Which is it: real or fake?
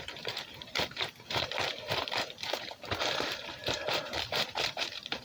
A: fake